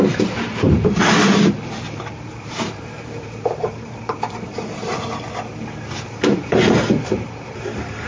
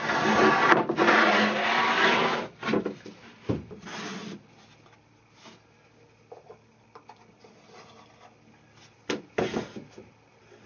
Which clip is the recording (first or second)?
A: second